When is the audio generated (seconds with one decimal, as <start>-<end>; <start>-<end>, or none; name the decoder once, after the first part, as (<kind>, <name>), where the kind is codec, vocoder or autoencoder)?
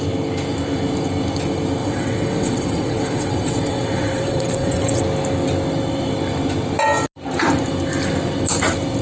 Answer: 1.8-5.0 (vocoder, WaveNeXt)